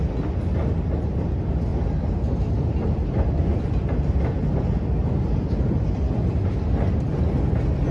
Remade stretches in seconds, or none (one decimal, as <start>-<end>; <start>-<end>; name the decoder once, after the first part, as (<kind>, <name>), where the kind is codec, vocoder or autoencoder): none